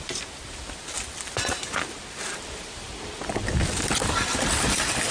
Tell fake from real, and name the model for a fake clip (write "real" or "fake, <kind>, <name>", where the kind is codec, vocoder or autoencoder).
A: real